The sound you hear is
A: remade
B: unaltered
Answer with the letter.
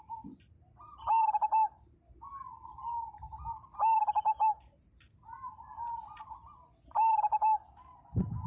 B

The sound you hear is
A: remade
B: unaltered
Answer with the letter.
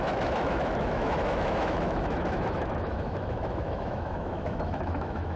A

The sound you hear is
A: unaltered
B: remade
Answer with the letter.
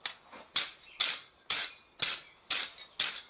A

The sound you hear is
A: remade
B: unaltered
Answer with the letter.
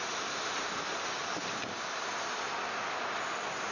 B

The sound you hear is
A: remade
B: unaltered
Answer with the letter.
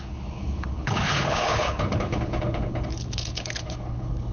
A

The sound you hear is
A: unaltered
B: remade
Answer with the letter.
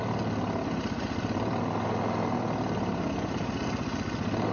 A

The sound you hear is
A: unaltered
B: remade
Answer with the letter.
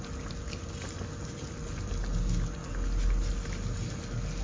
A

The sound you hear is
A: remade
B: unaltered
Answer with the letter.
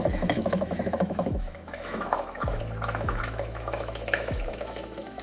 A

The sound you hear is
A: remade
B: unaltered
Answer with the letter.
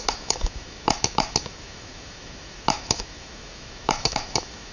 A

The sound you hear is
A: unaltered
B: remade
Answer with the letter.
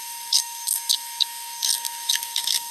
B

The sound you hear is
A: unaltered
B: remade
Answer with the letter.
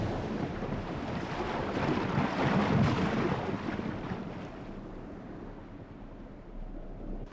A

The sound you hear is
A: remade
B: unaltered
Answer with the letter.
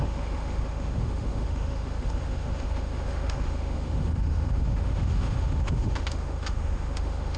A